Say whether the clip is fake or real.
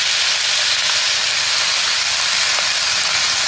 real